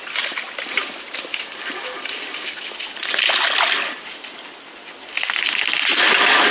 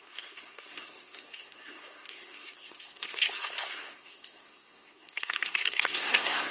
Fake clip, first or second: second